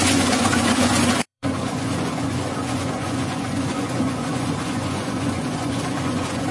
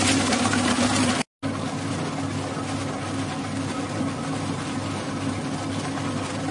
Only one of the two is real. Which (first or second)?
second